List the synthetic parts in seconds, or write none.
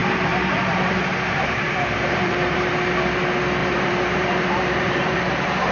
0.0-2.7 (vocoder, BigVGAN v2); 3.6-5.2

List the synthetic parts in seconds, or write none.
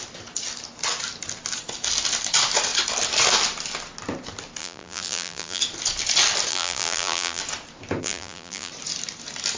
4.6-5.6 (vocoder, BigVGAN v2); 6.5-7.4; 8.0-8.7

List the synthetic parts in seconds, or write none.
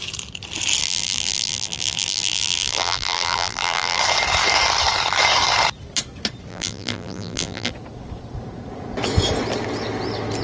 0.8-4.0 (vocoder, BigVGAN v2); 6.5-7.7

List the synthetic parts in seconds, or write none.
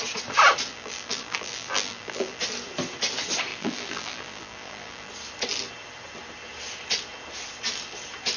0.7-2.4 (vocoder, BigVGAN v2); 3.5-5.1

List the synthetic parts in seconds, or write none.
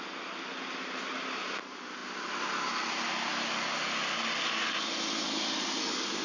none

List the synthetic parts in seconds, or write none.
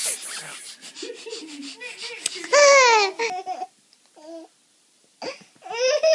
0.0-0.7 (vocoder, BigVGAN v2)